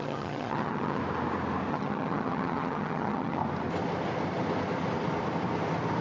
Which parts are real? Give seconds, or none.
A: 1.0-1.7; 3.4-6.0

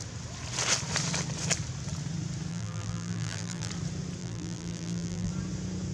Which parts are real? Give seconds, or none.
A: 0.0-2.5; 3.7-4.2; 5.3-5.9